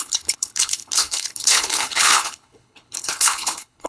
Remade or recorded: remade